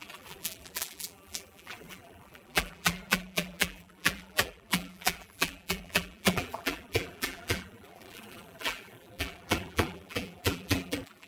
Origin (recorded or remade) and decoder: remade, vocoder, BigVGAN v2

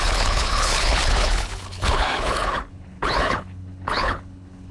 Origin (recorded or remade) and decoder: remade, codec, HILCodec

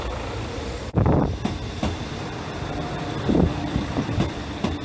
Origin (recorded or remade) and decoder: remade, vocoder, BigVGAN v2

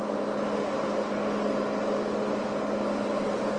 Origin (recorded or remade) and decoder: recorded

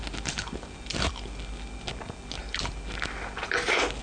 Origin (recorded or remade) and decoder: recorded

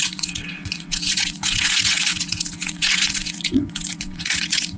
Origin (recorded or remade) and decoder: remade, vocoder, WaveNeXt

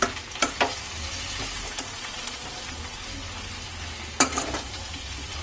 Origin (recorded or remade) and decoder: recorded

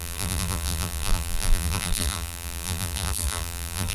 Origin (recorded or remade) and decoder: remade, vocoder, BigVGAN v2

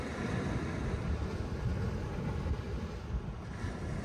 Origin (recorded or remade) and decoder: recorded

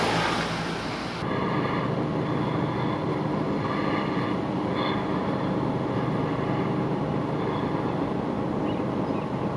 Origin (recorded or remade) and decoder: recorded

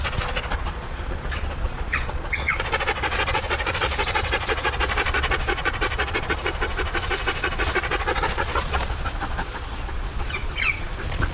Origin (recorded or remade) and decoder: remade, vocoder, Vocos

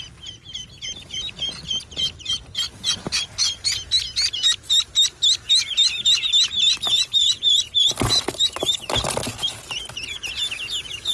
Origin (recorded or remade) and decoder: recorded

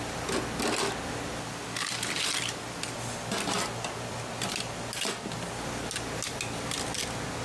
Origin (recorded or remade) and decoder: recorded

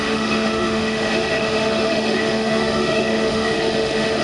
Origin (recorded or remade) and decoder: remade, autoencoder, DAC-VAE